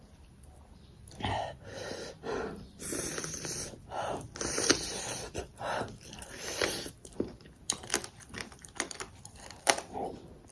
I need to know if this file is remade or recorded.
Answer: remade